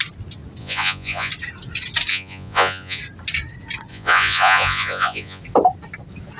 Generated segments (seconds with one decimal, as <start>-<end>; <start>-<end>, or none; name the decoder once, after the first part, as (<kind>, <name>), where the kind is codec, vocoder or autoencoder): 0.6-1.3 (vocoder, Vocos); 2.1-3.0; 3.9-5.4